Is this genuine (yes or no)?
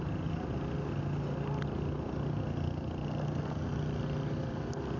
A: yes